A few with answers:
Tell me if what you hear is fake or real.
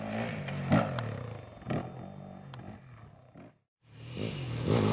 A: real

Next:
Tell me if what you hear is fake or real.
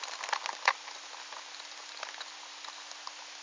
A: real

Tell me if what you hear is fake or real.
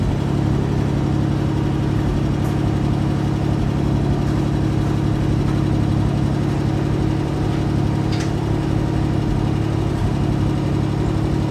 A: real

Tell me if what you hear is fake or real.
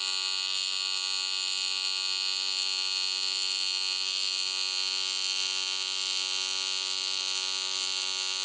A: real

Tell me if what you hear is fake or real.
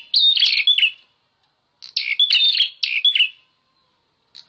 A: real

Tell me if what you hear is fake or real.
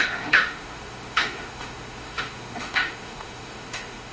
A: fake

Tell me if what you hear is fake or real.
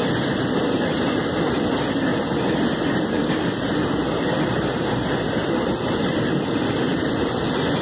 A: real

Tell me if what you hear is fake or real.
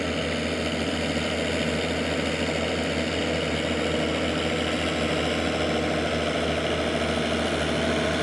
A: real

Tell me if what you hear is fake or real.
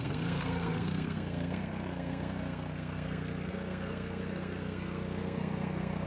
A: fake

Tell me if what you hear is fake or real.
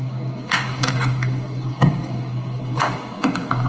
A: fake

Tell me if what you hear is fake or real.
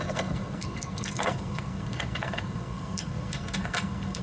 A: fake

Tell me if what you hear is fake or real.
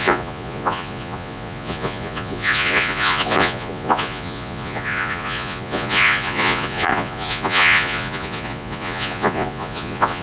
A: fake